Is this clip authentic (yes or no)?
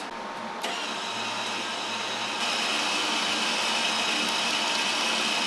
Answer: yes